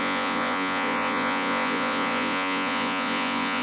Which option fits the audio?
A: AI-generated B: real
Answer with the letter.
A